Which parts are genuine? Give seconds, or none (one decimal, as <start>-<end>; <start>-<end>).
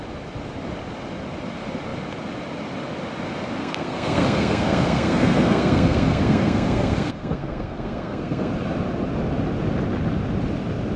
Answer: 0.0-3.6; 8.5-11.0